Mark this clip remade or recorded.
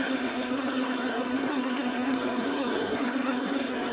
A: remade